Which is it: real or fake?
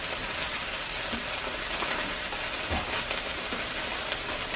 real